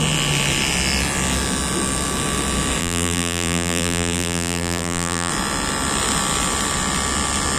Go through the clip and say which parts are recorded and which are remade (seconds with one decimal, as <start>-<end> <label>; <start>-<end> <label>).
0.0-2.8 recorded; 2.8-5.3 remade; 5.3-7.6 recorded